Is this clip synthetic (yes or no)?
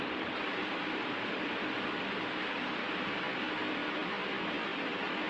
no